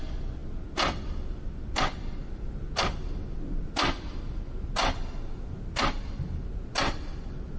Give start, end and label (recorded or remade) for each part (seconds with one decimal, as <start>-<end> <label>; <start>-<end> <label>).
0.0-7.6 recorded

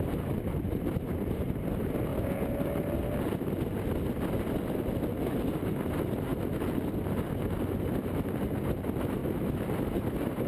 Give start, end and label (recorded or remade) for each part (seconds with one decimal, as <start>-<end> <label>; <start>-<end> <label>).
0.0-2.1 remade; 2.1-5.3 recorded; 5.3-6.3 remade; 6.3-8.6 recorded; 8.6-9.2 remade; 9.2-9.7 recorded; 9.7-10.5 remade

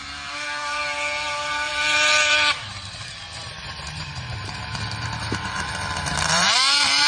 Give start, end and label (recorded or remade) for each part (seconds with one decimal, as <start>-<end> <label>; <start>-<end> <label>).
0.0-7.1 remade

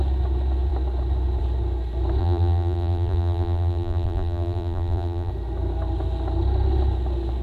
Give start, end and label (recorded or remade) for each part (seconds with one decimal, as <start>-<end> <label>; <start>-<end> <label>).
0.0-2.2 recorded; 2.2-5.3 remade; 5.3-7.4 recorded

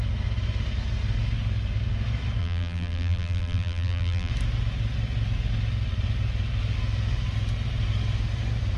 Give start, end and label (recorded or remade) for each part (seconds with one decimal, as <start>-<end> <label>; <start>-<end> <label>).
0.0-2.4 recorded; 2.4-4.3 remade; 4.3-8.8 recorded

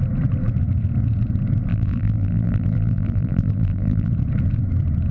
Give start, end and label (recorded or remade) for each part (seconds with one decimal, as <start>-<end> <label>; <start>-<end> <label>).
0.0-1.7 recorded; 1.7-4.1 remade; 4.1-5.1 recorded

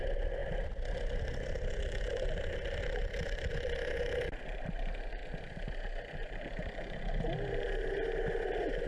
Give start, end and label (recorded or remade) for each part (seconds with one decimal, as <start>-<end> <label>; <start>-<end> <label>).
0.0-0.4 recorded; 0.4-3.5 remade; 3.5-8.9 recorded